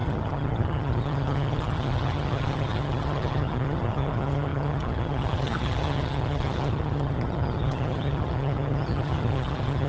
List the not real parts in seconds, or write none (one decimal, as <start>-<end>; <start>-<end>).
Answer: 0.0-9.9